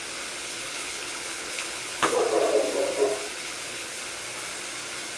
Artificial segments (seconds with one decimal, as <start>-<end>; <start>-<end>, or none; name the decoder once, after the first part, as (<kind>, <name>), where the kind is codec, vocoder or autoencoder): 0.4-2.2 (codec, HILCodec); 3.2-4.0